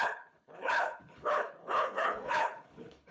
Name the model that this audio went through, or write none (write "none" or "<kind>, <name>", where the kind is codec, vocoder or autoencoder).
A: codec, HILCodec